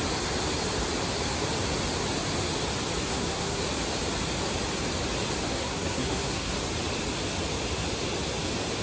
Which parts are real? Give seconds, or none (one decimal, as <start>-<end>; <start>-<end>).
0.0-3.1; 3.6-5.5; 6.5-8.8